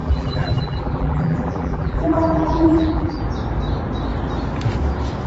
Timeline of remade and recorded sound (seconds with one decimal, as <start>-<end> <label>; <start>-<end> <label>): 0.0-3.2 remade; 3.2-5.3 recorded